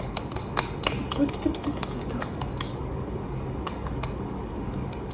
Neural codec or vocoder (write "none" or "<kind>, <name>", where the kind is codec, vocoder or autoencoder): codec, DAC